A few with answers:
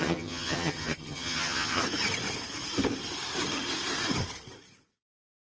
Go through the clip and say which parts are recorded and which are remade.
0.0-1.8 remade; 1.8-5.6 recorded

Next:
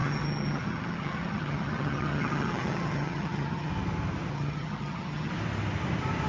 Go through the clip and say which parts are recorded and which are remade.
0.0-3.7 remade; 3.7-4.3 recorded; 4.3-5.3 remade; 5.3-6.3 recorded

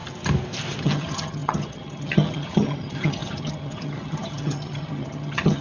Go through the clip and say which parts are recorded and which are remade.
0.0-0.8 recorded; 0.8-5.6 remade

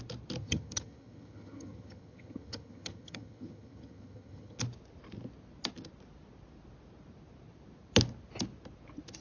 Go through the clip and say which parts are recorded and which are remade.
0.0-0.4 recorded; 0.4-4.6 remade; 4.6-9.2 recorded

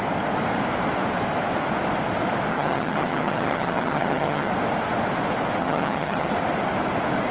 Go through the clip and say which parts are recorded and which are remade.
0.0-2.5 recorded; 2.5-4.5 remade; 4.5-5.6 recorded; 5.6-6.3 remade; 6.3-7.3 recorded

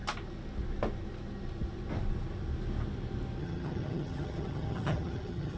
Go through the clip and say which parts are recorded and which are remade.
0.0-3.4 recorded; 3.4-5.6 remade

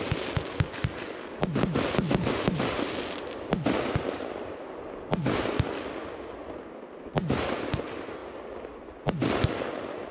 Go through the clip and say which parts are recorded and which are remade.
0.0-10.1 recorded